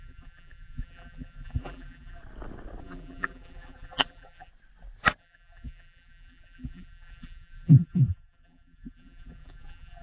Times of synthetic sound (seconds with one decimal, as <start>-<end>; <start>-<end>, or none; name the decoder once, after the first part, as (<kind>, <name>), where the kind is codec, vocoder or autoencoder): 0.0-2.2 (vocoder, BigVGAN v2); 2.8-4.5; 5.2-10.0